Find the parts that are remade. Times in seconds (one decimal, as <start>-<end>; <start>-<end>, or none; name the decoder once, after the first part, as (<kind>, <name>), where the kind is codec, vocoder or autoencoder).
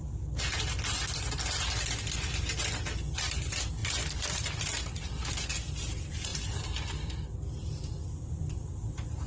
3.8-5.3 (vocoder, BigVGAN v2); 6.3-7.2